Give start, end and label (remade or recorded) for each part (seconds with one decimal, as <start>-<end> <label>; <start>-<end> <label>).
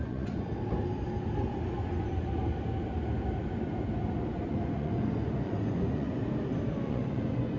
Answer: 0.0-0.5 remade; 0.5-4.5 recorded; 4.5-6.2 remade; 6.2-6.8 recorded; 6.8-7.6 remade